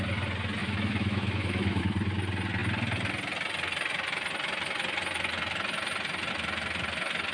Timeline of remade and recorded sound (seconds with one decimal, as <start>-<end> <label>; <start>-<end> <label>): 0.0-0.6 recorded; 0.6-1.8 remade; 1.8-7.3 recorded